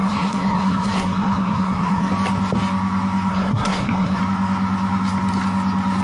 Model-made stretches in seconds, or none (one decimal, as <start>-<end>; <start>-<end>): 0.0-2.1; 3.3-4.2